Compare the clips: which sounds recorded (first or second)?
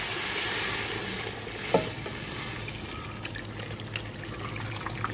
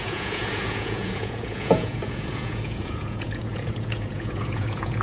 first